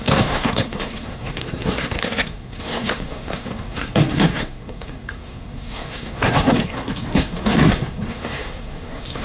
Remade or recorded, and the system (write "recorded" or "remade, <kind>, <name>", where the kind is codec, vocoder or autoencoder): remade, codec, SNAC